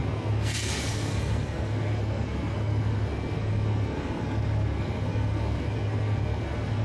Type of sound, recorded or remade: remade